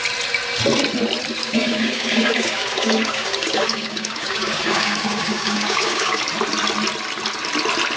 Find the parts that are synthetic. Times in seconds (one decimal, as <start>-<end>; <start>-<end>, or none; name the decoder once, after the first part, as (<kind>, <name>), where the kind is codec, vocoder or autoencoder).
1.4-6.2 (codec, DAC)